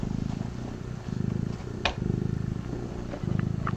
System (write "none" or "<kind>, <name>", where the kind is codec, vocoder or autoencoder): none